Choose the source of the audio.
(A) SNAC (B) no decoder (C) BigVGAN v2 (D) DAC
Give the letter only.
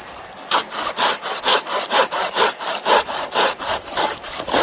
C